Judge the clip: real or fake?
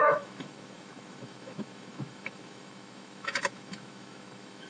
fake